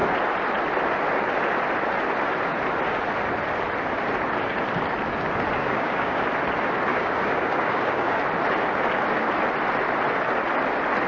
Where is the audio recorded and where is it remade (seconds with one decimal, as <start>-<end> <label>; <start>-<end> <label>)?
0.0-5.6 recorded; 5.6-6.2 remade; 6.2-6.9 recorded; 6.9-8.2 remade; 8.2-11.1 recorded